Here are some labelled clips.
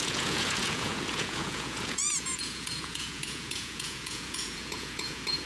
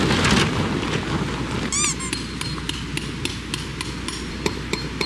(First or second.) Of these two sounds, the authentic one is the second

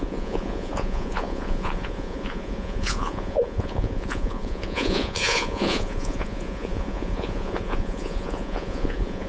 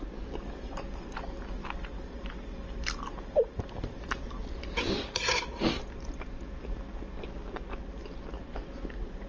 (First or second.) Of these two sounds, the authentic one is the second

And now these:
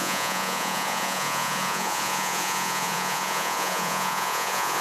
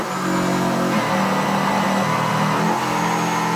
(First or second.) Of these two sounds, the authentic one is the second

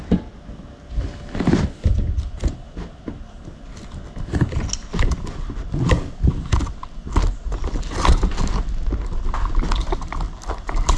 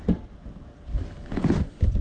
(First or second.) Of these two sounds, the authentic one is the first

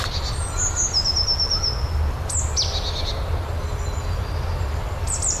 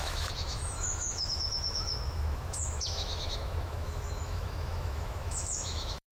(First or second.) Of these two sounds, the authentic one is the first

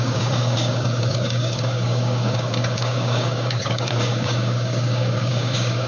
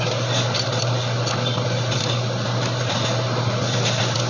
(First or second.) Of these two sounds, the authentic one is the second